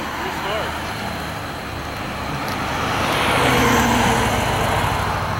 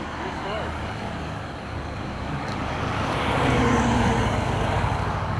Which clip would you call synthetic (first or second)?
second